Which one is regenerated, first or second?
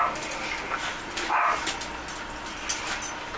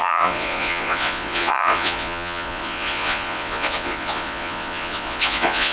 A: second